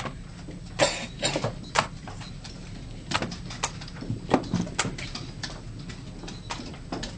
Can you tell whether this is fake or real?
real